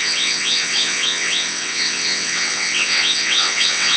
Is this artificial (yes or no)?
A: yes